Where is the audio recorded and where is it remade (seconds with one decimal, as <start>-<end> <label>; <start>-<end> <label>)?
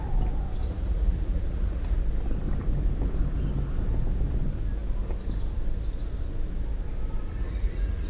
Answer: 0.0-0.6 recorded; 0.6-2.0 remade; 2.0-7.4 recorded; 7.4-8.1 remade